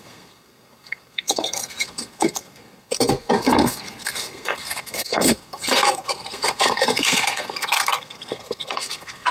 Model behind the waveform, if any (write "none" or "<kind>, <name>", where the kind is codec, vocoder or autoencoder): codec, SNAC